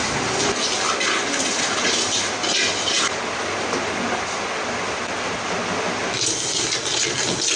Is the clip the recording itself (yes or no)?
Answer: yes